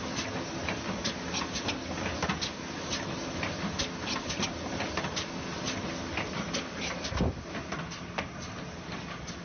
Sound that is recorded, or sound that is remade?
recorded